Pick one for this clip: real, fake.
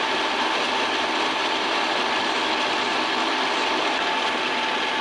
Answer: fake